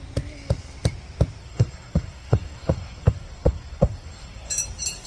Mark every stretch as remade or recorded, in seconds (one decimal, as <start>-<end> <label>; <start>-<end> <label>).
0.0-1.4 recorded; 1.4-4.5 remade; 4.5-5.1 recorded